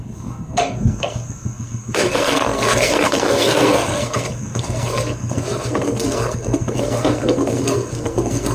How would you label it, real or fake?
fake